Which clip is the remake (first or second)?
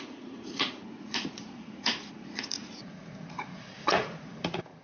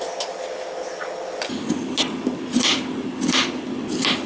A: first